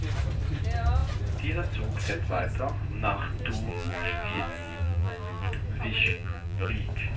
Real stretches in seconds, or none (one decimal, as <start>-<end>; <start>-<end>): 0.0-3.7; 5.5-6.1; 6.7-7.2